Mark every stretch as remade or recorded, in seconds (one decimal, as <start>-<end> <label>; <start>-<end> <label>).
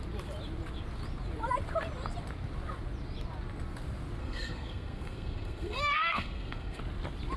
0.0-4.2 recorded; 4.2-6.8 remade; 6.8-7.4 recorded